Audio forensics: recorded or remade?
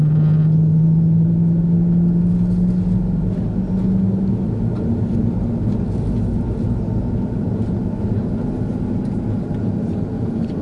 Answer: recorded